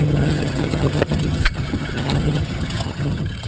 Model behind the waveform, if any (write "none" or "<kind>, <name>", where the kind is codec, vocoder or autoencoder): vocoder, HiFi-GAN